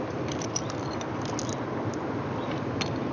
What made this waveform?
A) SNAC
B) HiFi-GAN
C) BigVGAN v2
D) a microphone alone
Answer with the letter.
D